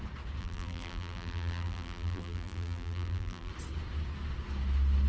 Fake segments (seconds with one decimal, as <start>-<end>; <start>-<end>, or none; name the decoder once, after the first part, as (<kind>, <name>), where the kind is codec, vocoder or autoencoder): 0.4-3.5 (vocoder, BigVGAN v2)